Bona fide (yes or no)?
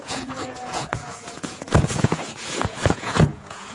no